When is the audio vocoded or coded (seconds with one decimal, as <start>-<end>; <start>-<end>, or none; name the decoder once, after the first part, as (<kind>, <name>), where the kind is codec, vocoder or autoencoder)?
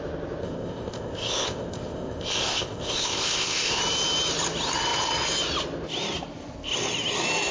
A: 0.4-3.8 (codec, ZipCodec)